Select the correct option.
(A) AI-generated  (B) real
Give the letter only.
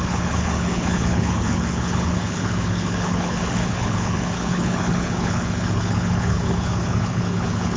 A